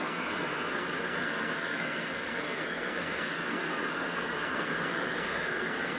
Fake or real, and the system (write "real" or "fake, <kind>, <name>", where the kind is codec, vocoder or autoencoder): fake, codec, SNAC